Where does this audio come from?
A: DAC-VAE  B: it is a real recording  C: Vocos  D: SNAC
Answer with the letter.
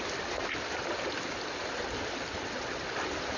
B